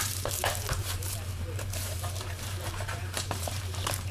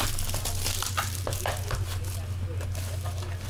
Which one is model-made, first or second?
first